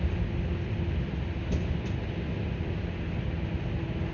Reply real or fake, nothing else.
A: real